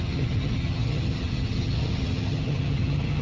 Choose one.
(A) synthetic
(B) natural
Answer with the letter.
A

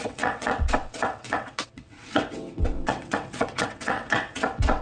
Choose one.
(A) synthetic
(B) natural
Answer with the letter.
A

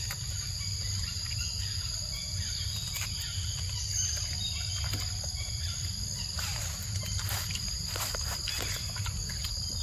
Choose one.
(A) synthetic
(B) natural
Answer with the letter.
B